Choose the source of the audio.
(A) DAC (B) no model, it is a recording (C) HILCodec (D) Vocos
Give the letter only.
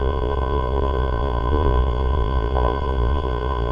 D